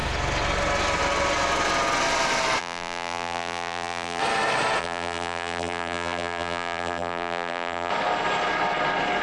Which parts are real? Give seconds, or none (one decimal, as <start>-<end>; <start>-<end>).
0.0-2.6; 4.2-4.8; 7.9-9.2

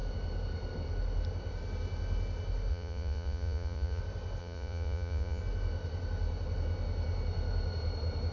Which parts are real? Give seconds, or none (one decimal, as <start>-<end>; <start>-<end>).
0.0-2.7; 4.0-4.4; 5.4-8.3

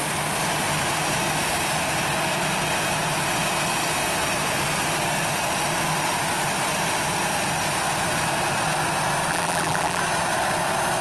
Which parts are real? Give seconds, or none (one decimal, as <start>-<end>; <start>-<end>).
0.0-9.3; 10.0-11.0

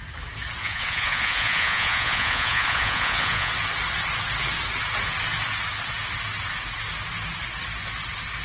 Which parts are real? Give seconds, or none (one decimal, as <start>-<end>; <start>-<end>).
0.0-0.6; 3.5-8.4

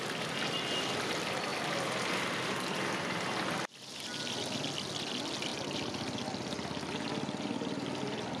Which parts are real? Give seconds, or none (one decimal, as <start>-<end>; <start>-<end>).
0.0-8.4